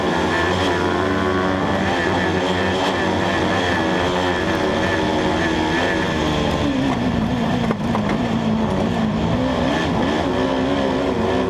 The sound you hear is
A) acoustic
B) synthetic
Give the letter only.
A